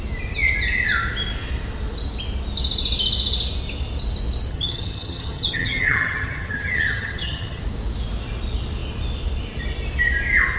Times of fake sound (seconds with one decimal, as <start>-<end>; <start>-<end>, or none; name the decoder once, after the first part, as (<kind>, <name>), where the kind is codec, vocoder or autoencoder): 4.5-7.6 (vocoder, HiFi-GAN)